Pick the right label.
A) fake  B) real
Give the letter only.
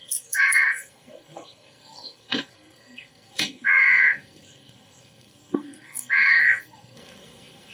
A